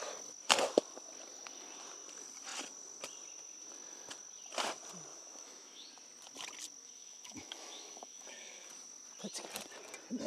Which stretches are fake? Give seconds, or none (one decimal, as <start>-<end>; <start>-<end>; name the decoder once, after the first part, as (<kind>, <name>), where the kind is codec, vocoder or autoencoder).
5.1-5.9 (autoencoder, DAC-VAE); 6.8-8.7